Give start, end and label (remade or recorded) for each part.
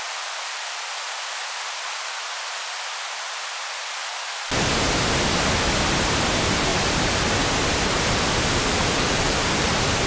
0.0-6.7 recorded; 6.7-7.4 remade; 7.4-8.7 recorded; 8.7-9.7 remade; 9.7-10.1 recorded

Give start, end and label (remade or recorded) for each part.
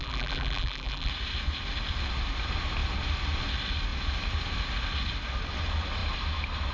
0.0-1.1 remade; 1.1-6.7 recorded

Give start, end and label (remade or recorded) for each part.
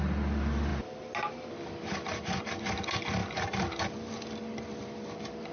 0.0-3.2 recorded; 3.2-3.8 remade; 3.8-5.5 recorded